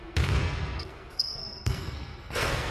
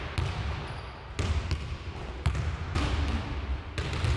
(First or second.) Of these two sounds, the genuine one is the second